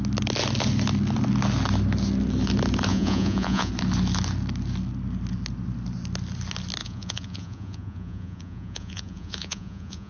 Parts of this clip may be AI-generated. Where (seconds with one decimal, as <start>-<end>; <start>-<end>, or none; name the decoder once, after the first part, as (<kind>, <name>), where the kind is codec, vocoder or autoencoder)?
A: 2.9-3.7 (vocoder, Vocos); 6.8-10.1